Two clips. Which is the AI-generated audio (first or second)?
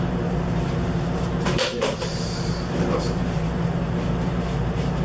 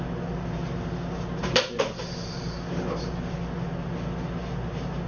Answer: first